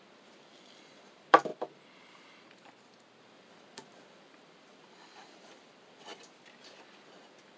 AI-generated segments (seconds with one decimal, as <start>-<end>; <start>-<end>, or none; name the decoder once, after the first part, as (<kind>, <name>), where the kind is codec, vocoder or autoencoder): 0.0-1.5 (vocoder, BigVGAN v2); 3.2-6.1; 6.8-7.6